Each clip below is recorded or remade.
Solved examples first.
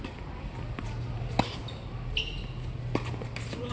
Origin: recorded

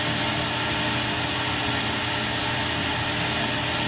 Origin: recorded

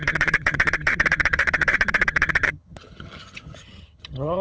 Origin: remade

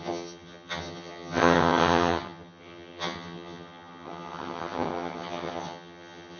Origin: remade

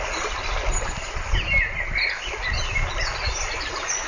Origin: recorded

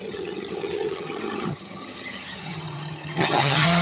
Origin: remade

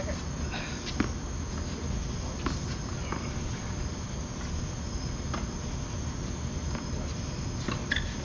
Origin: recorded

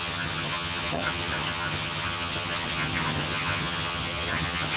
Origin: remade